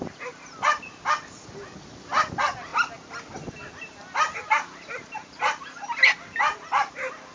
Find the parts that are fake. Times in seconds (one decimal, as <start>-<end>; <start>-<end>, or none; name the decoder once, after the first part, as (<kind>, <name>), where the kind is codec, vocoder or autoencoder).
none